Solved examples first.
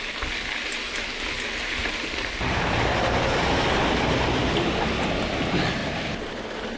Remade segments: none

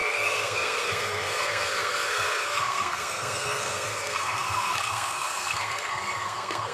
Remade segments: 0.0-6.7 (codec, SNAC)